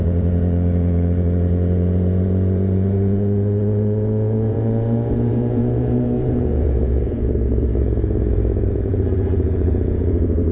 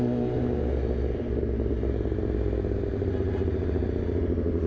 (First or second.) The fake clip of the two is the first